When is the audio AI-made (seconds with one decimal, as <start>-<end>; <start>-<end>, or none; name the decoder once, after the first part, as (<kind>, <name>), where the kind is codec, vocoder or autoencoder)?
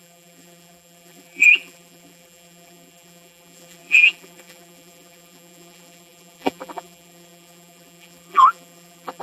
0.0-9.2 (vocoder, BigVGAN v2)